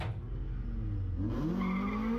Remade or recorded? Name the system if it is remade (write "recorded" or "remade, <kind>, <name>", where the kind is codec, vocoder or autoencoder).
recorded